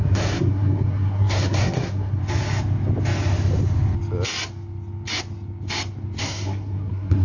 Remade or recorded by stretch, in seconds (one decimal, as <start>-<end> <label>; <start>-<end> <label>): 0.0-2.2 remade; 2.2-6.2 recorded; 6.2-7.2 remade